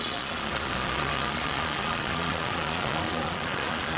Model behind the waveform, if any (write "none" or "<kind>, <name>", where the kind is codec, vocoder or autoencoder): vocoder, Vocos